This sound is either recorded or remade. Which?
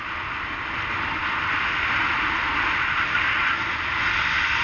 recorded